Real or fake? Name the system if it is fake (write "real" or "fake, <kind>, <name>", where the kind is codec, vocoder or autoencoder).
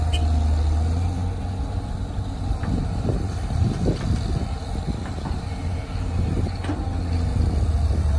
real